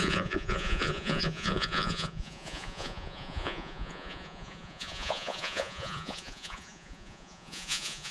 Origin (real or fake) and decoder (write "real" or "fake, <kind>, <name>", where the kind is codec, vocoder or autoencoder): fake, vocoder, Vocos